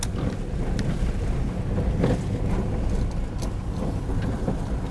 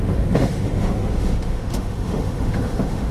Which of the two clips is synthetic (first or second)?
second